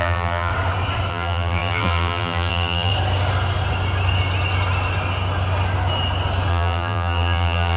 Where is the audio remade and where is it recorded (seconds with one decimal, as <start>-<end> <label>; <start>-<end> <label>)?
0.0-0.5 remade; 0.5-1.1 recorded; 1.1-2.9 remade; 2.9-6.5 recorded; 6.5-7.8 remade